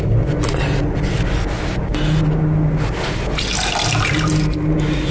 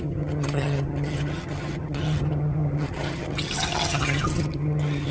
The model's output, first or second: second